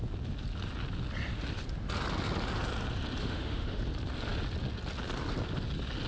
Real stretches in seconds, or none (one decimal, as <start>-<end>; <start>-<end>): 0.0-3.2; 3.8-6.1